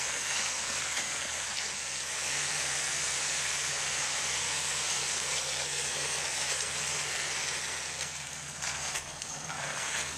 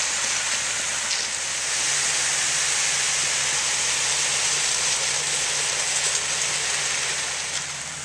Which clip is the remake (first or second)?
first